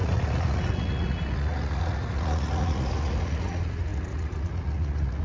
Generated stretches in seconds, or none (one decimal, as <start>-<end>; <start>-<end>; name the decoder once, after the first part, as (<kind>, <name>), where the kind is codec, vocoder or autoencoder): 0.0-5.2 (vocoder, Vocos)